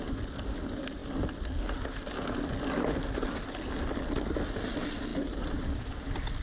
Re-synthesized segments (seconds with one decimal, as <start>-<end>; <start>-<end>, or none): 5.1-5.8